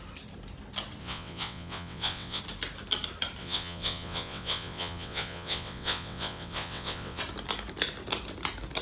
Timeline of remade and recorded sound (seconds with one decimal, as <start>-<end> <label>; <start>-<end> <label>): 0.0-1.0 recorded; 1.0-2.4 remade; 2.4-3.4 recorded; 3.4-7.2 remade; 7.2-8.8 recorded